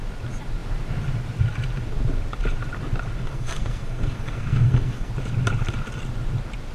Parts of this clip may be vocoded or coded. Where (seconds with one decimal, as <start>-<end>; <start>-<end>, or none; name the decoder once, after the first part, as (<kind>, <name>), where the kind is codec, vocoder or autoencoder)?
3.2-5.1 (codec, SNAC)